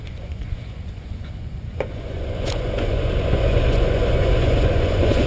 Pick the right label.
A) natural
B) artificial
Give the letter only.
B